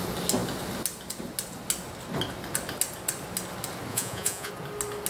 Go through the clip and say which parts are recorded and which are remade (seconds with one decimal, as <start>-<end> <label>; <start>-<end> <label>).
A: 0.0-3.9 recorded; 3.9-4.5 remade; 4.5-5.1 recorded